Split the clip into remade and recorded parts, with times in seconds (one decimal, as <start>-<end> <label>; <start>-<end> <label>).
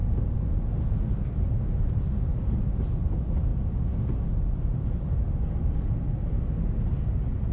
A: 0.0-2.8 remade; 2.8-3.5 recorded; 3.5-6.4 remade; 6.4-7.5 recorded